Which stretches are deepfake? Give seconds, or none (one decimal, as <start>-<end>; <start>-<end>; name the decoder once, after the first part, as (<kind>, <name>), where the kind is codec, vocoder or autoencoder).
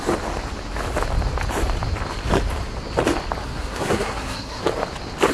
3.4-4.6 (codec, SNAC)